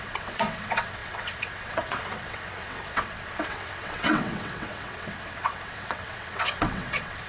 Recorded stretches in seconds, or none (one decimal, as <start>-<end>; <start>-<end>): none